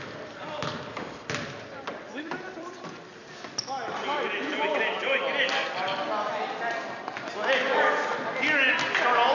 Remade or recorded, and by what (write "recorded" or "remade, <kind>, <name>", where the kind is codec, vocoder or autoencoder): recorded